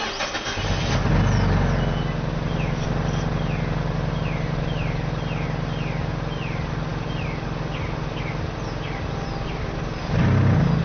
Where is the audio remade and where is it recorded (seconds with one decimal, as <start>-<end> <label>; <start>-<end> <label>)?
0.0-10.8 recorded